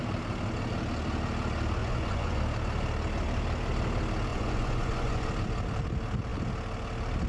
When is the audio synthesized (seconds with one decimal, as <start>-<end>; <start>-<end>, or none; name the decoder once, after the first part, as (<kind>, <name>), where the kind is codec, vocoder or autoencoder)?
1.8-2.4 (vocoder, Vocos); 4.3-5.3